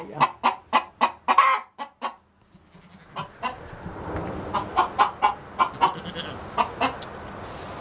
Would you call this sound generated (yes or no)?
no